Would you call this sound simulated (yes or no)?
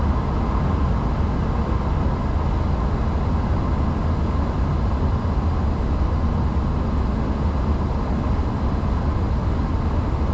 no